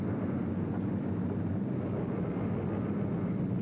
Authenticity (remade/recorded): recorded